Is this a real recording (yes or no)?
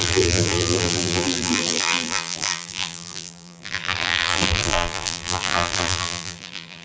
no